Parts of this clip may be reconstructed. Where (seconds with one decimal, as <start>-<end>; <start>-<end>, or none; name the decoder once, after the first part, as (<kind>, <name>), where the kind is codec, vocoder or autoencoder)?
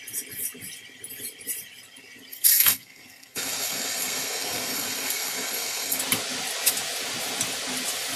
2.3-6.0 (codec, SNAC)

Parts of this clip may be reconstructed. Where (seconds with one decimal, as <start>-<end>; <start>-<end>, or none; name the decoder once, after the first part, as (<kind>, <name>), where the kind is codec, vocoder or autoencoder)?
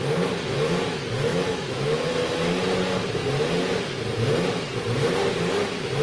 1.3-2.1 (autoencoder, DAC-VAE)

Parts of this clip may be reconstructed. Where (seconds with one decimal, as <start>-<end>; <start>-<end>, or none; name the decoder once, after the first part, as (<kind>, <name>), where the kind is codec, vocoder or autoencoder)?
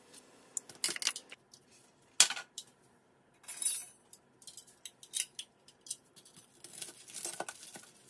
none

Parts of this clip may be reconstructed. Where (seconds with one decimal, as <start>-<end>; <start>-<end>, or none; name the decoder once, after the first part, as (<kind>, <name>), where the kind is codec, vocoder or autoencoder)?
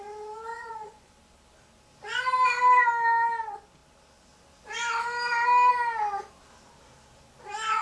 0.5-1.1 (vocoder, Vocos)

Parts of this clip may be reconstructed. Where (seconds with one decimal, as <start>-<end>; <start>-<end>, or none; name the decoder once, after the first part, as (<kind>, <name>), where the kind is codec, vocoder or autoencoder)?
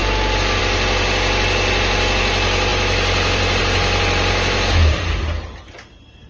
none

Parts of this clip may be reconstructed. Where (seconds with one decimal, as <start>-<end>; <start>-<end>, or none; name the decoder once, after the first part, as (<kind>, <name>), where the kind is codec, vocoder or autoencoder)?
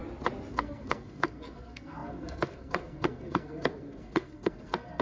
0.5-5.0 (codec, SNAC)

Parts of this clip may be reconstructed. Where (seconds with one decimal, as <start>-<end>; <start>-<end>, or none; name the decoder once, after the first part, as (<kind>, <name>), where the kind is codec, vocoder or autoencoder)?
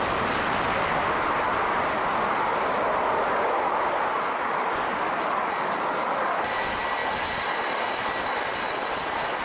none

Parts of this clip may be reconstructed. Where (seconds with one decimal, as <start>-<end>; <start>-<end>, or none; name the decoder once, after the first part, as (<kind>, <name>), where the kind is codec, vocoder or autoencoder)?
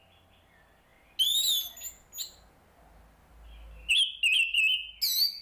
none